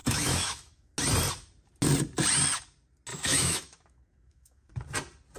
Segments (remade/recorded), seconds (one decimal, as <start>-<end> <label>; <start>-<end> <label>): 0.0-0.9 remade; 0.9-3.1 recorded; 3.1-4.7 remade; 4.7-5.4 recorded